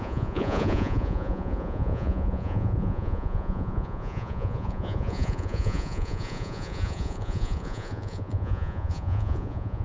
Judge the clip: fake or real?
fake